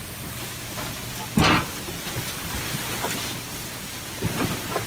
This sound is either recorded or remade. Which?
recorded